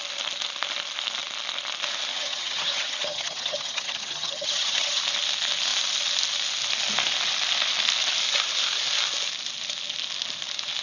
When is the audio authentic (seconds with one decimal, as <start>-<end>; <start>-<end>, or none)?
0.0-2.1; 5.0-10.8